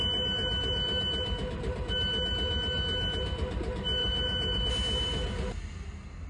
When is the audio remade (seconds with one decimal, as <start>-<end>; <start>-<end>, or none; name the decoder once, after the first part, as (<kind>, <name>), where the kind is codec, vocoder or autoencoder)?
4.0-4.7 (vocoder, Vocos)